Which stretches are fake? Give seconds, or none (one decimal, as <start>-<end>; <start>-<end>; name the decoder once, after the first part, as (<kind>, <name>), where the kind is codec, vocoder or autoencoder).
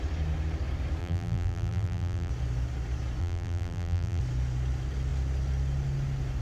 1.0-2.3 (vocoder, BigVGAN v2); 3.2-4.2